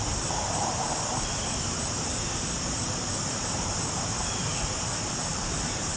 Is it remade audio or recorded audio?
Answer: remade